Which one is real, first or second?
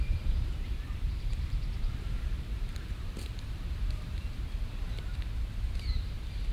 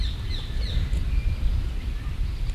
second